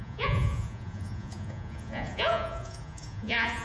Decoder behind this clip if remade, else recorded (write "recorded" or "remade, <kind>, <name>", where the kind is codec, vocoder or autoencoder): remade, vocoder, Vocos